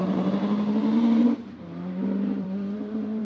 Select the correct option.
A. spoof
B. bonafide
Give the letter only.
A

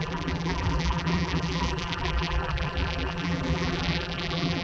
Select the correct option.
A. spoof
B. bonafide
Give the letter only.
A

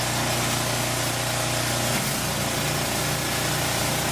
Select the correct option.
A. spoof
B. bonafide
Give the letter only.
B